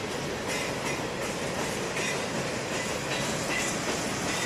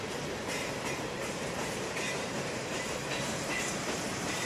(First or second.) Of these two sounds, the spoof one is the second